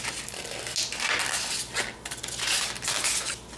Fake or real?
real